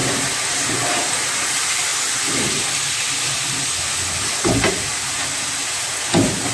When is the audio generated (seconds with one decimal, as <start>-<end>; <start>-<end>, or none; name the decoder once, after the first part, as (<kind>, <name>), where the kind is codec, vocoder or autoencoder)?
0.0-1.9 (vocoder, BigVGAN v2); 4.8-6.5